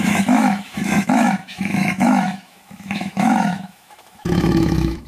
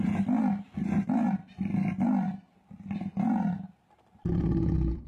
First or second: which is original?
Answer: second